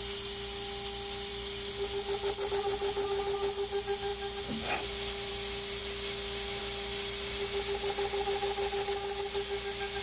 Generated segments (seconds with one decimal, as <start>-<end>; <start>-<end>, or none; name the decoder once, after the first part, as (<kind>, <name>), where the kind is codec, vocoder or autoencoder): none